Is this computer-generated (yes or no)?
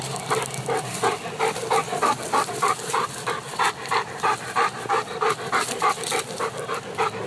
no